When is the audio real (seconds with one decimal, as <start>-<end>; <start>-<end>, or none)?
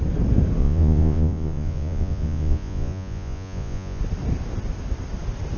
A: 0.0-0.6; 4.0-5.6